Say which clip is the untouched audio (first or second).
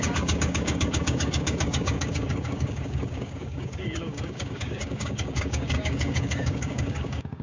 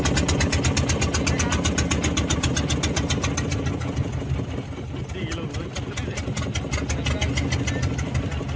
second